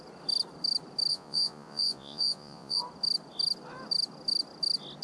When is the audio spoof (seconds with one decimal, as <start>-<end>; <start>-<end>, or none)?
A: 1.1-2.8